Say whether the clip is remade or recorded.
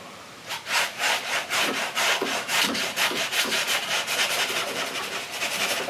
remade